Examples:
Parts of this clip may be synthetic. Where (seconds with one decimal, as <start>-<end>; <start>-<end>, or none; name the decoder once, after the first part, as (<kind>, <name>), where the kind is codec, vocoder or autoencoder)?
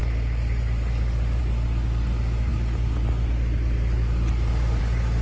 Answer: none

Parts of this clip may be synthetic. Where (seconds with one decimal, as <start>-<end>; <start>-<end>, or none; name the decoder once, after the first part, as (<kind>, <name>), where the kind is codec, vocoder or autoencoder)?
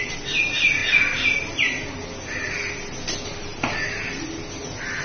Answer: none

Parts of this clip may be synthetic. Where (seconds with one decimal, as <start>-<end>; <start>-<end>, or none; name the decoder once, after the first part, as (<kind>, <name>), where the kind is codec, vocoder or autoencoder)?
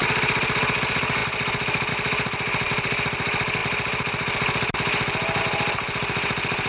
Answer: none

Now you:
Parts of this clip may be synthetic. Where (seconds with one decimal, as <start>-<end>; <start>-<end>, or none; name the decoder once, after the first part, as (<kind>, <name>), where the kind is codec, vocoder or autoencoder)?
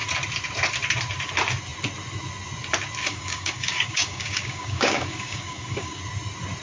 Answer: 3.0-6.0 (codec, DAC)